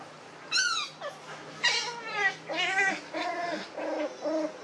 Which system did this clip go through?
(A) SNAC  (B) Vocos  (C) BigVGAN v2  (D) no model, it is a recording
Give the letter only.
D